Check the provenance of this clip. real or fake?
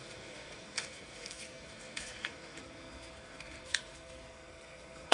fake